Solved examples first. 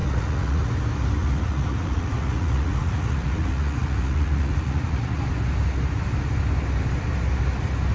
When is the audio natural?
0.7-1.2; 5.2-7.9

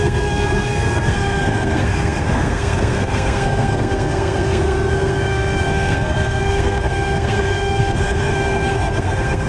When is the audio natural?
none

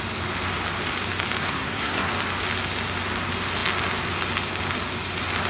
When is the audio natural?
0.0-1.4; 2.1-5.5

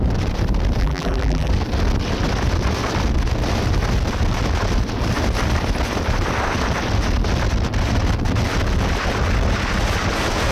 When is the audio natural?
0.0-0.8; 1.5-10.5